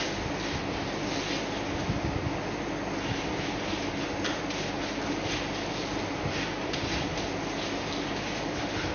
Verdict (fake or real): real